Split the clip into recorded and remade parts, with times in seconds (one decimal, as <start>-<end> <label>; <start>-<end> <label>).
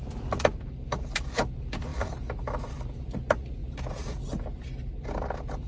0.0-5.7 recorded